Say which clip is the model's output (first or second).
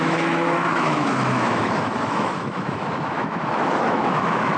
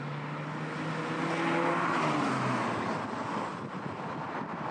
first